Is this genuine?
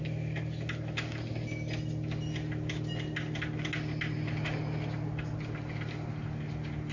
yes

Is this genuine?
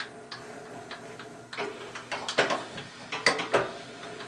yes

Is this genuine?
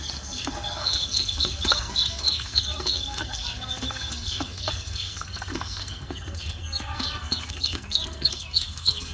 no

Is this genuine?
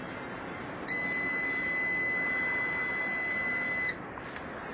yes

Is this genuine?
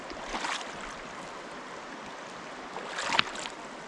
yes